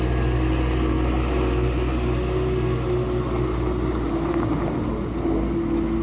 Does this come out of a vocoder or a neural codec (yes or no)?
no